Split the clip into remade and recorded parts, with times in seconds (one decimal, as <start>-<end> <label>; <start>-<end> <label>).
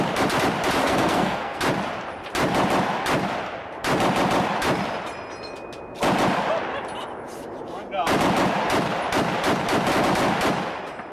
0.0-0.8 recorded; 0.8-1.6 remade; 1.6-11.1 recorded